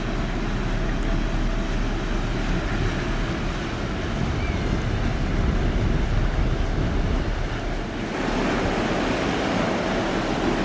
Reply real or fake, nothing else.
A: real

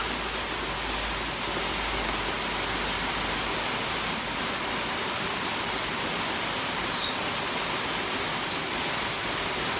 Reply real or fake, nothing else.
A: real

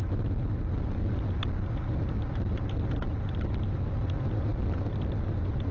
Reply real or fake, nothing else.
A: real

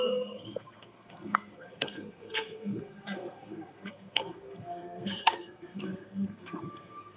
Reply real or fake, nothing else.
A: fake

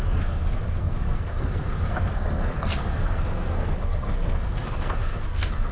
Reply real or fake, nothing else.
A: fake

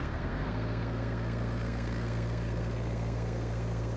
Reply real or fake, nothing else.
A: fake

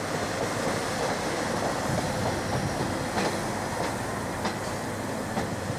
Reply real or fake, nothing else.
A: real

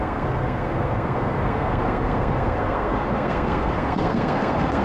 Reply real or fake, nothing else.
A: fake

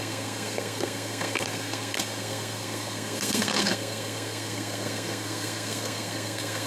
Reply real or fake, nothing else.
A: fake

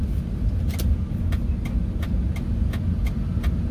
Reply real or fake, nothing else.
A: real